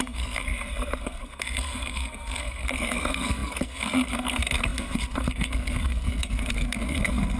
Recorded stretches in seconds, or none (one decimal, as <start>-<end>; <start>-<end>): none

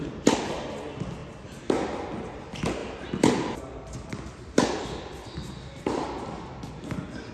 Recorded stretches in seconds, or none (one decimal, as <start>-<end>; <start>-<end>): 0.0-7.3

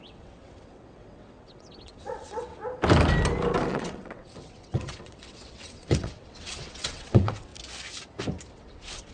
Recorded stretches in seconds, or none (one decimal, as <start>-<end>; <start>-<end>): 2.6-3.7; 7.5-8.5

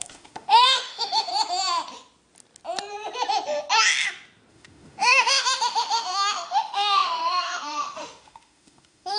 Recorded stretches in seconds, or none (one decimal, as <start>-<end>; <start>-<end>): 1.3-4.5